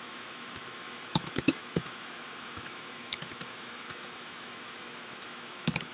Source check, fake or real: fake